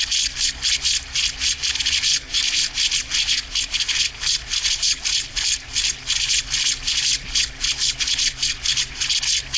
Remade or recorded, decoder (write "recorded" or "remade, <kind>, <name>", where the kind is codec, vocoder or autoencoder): recorded